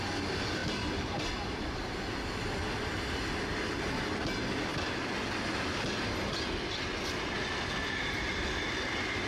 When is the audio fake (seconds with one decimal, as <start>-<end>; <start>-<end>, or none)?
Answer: none